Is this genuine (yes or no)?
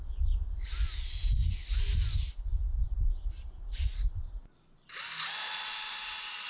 yes